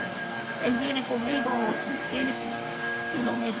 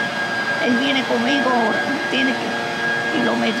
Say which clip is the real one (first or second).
second